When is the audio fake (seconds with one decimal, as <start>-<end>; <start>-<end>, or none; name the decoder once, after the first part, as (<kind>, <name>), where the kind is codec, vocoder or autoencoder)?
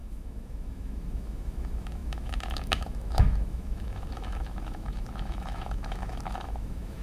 0.0-7.0 (autoencoder, DAC-VAE)